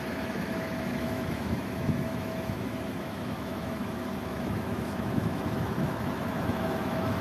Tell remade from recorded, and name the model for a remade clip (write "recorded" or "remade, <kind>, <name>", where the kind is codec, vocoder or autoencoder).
remade, autoencoder, DAC-VAE